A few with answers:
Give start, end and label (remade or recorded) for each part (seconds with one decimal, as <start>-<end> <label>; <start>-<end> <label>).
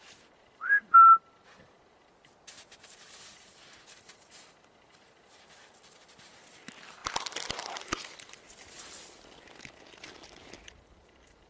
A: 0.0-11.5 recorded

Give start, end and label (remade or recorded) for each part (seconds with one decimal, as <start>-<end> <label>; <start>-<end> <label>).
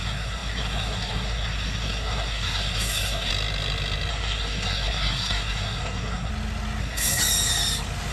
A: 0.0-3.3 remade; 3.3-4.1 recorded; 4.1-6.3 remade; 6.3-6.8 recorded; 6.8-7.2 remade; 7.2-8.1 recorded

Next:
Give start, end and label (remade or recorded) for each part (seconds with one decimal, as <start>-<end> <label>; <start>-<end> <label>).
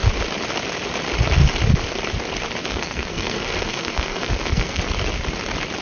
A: 0.0-2.6 recorded; 2.6-4.8 remade; 4.8-5.8 recorded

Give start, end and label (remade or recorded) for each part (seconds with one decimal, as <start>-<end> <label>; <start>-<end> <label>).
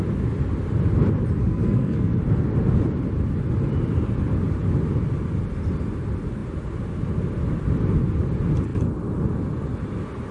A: 0.0-1.4 recorded; 1.4-2.2 remade; 2.2-10.3 recorded